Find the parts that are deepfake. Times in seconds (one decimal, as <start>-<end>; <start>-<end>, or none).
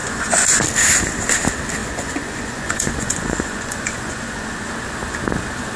0.0-0.6; 1.8-4.7